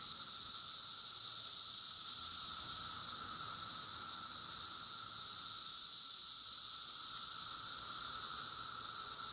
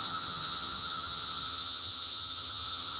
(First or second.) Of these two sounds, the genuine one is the first